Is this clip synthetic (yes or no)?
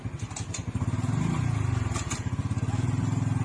no